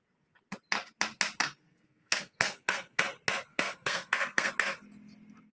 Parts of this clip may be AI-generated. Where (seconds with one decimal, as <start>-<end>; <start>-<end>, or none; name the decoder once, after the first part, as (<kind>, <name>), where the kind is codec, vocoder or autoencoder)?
1.4-3.0 (codec, SNAC); 3.5-4.5